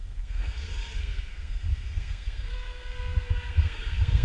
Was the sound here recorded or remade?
remade